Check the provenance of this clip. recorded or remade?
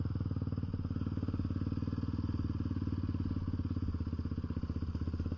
recorded